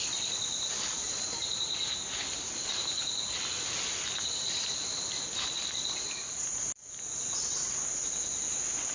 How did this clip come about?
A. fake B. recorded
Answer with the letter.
B